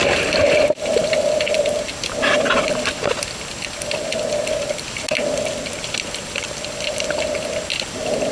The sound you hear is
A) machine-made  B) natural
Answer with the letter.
B